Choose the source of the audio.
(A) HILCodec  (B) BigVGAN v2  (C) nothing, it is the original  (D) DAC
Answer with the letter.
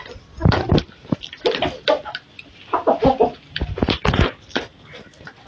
C